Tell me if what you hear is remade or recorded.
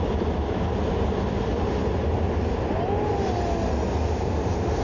recorded